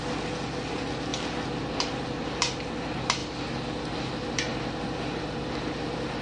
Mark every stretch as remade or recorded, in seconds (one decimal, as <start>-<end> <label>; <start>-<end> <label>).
0.0-6.2 recorded